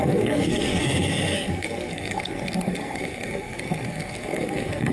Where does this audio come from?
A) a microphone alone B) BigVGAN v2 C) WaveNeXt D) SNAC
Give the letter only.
D